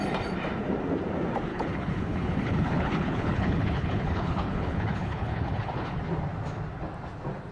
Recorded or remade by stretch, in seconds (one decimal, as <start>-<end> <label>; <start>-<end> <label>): 0.0-1.5 recorded; 1.5-6.0 remade; 6.0-7.5 recorded

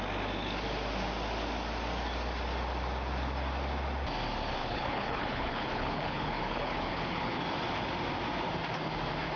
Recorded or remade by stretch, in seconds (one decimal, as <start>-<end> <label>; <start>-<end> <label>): 0.0-4.6 recorded; 4.6-7.4 remade; 7.4-9.4 recorded

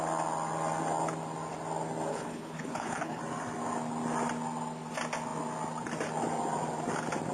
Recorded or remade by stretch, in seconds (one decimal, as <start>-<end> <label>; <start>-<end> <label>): 0.0-2.1 recorded; 2.1-3.2 remade; 3.2-7.3 recorded